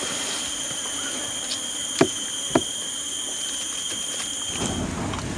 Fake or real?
real